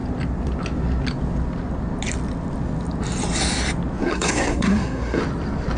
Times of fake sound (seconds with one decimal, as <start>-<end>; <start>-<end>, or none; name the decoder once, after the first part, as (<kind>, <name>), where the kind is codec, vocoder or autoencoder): 4.0-5.2 (codec, SNAC)